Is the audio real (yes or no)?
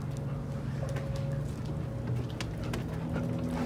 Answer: yes